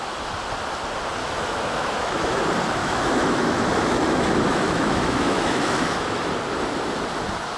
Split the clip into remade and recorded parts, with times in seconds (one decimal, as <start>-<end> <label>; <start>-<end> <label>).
0.0-1.2 recorded; 1.2-2.4 remade; 2.4-2.8 recorded; 2.8-6.3 remade; 6.3-7.6 recorded